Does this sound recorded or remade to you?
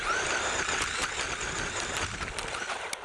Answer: recorded